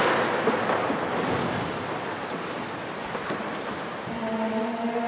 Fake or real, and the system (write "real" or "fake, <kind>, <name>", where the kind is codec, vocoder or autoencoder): real